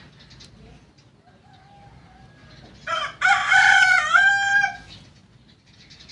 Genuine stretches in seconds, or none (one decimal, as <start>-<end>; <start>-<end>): 0.0-3.4; 4.3-6.1